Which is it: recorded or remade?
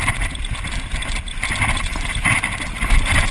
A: recorded